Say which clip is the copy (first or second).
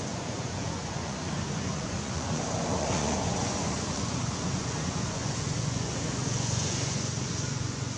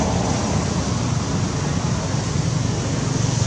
first